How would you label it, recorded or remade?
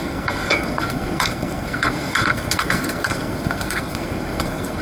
remade